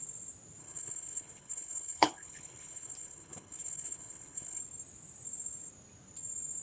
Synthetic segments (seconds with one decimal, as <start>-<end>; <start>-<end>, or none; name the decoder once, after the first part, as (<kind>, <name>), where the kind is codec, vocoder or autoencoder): 0.6-4.6 (codec, HILCodec)